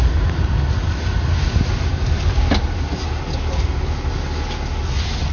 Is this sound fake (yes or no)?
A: no